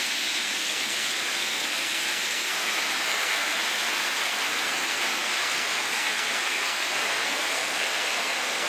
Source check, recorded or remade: remade